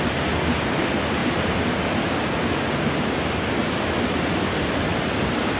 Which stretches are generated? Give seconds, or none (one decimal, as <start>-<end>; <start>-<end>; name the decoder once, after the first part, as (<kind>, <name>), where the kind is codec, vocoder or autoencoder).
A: none